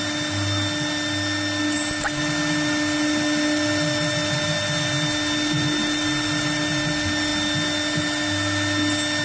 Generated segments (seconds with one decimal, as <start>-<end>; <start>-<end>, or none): none